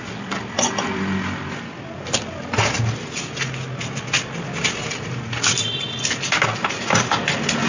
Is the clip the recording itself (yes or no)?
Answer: yes